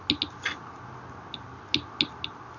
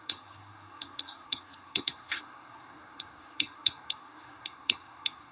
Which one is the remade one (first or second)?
second